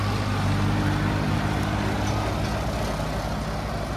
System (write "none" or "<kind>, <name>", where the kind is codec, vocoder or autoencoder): none